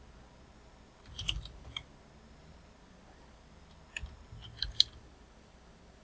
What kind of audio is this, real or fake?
real